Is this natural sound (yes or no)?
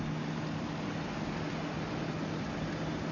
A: yes